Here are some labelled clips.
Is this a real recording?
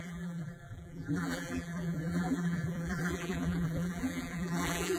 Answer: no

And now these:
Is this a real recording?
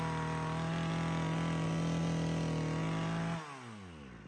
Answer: yes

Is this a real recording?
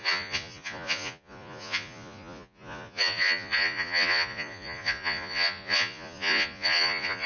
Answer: no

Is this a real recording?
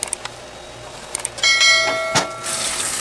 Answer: yes